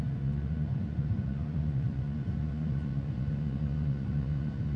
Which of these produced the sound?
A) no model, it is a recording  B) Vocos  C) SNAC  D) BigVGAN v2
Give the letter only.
B